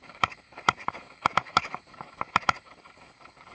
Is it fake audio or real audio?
fake